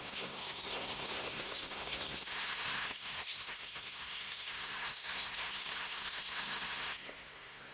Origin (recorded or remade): remade